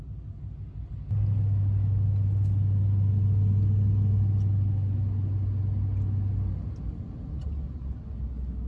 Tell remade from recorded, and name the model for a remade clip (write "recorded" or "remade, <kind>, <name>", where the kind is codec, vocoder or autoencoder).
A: recorded